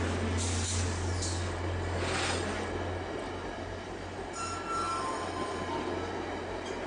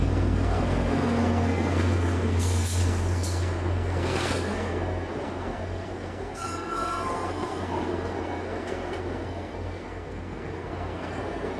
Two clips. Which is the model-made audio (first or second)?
second